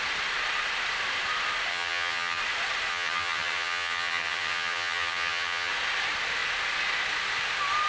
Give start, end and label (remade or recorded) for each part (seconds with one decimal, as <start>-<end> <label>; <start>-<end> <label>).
0.0-1.7 recorded; 1.7-2.4 remade; 2.4-2.9 recorded; 2.9-5.7 remade; 5.7-7.9 recorded